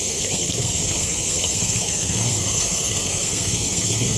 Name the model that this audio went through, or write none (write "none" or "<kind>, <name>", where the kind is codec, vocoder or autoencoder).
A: codec, SNAC